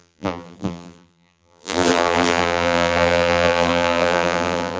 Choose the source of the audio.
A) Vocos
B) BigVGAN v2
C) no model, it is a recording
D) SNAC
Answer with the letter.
B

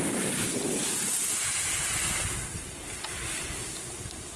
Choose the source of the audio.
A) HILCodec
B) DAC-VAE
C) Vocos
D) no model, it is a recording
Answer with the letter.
D